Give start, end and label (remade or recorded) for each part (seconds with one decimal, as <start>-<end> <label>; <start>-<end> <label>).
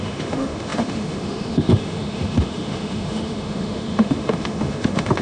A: 0.0-5.2 remade